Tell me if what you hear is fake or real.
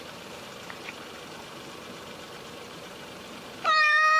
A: fake